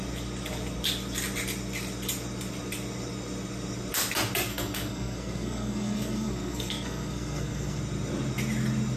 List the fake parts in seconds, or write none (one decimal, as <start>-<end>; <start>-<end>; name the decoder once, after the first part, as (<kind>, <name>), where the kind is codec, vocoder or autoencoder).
4.5-7.8 (codec, SNAC)